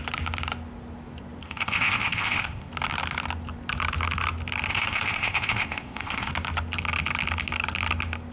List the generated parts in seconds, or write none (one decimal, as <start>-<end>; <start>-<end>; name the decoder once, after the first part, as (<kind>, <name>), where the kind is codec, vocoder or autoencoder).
1.4-2.7 (codec, ZipCodec); 4.7-6.3